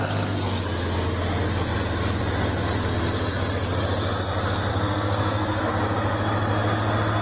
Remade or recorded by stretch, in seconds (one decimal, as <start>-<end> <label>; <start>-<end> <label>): 0.0-4.7 recorded; 4.7-5.7 remade; 5.7-7.2 recorded